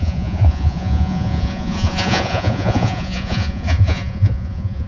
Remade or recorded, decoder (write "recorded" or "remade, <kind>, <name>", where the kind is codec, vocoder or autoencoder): remade, vocoder, Vocos